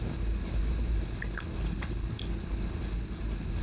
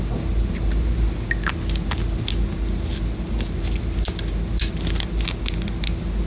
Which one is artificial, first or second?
first